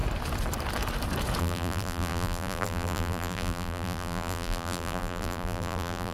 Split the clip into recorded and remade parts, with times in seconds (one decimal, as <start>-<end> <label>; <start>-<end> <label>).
0.0-1.4 recorded; 1.4-6.1 remade